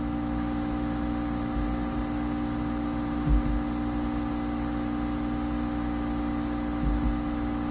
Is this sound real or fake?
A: real